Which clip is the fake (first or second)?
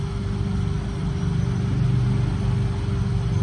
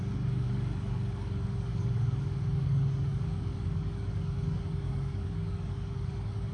second